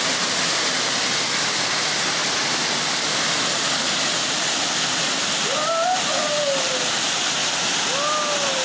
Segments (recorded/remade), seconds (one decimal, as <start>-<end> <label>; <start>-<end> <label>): 0.0-8.6 recorded